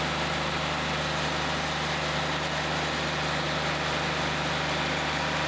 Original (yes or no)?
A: yes